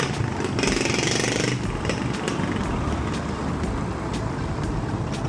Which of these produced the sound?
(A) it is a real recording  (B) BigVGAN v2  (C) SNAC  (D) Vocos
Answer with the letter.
A